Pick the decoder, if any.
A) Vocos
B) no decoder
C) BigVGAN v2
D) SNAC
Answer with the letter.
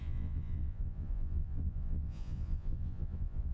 A